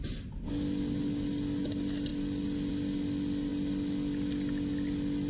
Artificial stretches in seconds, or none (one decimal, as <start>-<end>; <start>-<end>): none